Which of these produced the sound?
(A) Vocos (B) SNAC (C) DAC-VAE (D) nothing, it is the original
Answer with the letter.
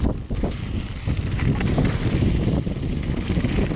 D